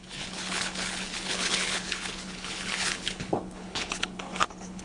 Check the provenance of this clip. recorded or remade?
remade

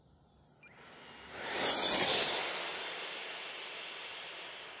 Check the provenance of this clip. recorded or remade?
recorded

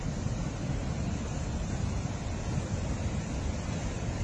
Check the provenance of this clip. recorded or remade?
recorded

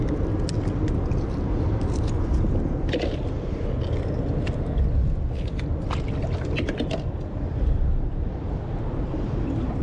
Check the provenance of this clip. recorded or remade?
recorded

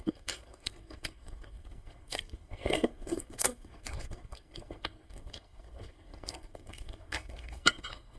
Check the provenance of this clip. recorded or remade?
remade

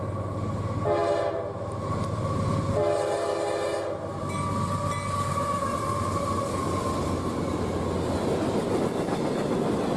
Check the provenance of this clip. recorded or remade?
recorded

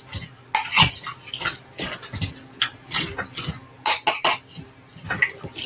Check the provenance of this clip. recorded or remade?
recorded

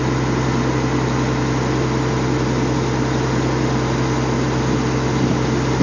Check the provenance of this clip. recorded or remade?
recorded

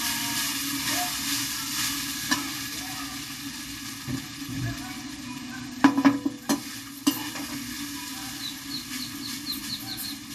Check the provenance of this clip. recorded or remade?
recorded